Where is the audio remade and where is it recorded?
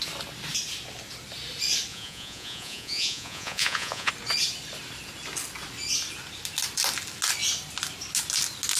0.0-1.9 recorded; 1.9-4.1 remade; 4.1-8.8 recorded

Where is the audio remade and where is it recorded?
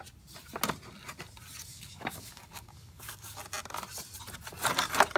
0.0-1.7 recorded; 1.7-3.4 remade; 3.4-5.2 recorded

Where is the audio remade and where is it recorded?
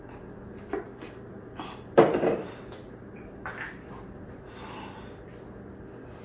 0.0-1.3 recorded; 1.3-4.9 remade; 4.9-6.2 recorded